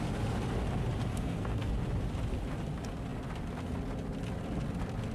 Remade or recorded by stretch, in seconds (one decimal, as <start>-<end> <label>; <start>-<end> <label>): 0.0-1.1 recorded; 1.1-1.7 remade; 1.7-5.1 recorded